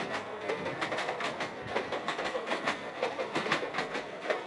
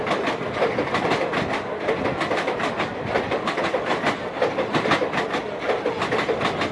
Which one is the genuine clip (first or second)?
second